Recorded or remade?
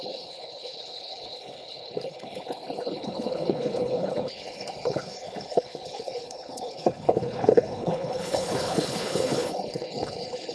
remade